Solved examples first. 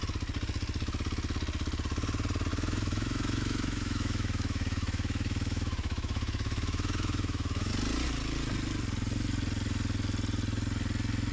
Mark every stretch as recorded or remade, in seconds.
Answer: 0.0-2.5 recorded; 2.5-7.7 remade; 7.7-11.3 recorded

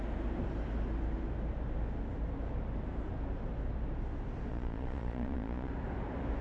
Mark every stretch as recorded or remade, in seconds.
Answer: 0.0-4.5 recorded; 4.5-5.7 remade; 5.7-6.4 recorded